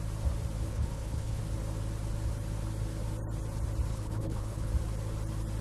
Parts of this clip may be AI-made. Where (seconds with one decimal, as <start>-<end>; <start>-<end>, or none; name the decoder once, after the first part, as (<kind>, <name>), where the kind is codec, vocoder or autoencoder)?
0.7-1.4 (codec, HILCodec); 3.9-4.7